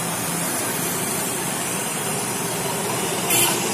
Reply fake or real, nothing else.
real